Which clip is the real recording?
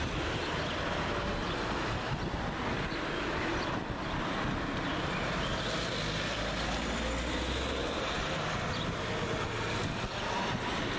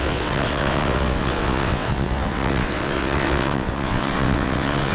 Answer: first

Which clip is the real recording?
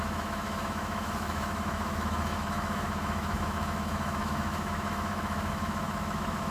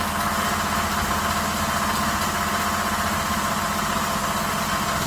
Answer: second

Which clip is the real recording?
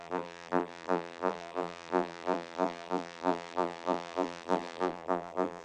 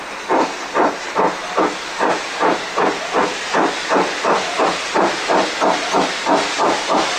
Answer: second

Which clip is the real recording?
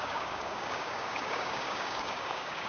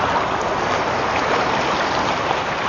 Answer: second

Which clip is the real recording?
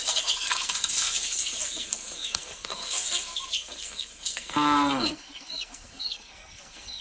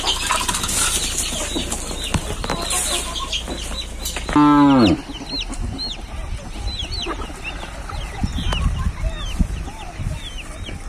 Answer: second